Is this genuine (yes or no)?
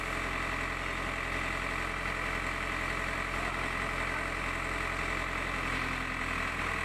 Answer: no